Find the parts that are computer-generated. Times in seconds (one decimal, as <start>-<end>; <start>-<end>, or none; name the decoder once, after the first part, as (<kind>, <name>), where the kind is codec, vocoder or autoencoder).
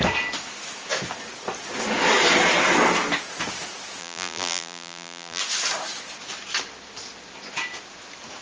4.0-5.4 (vocoder, BigVGAN v2)